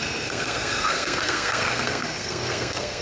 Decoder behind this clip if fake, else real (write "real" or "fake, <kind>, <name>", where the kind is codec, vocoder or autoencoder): fake, codec, SNAC